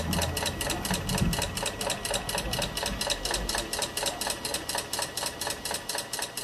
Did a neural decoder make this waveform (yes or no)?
no